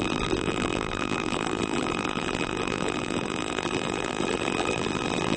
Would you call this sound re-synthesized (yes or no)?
yes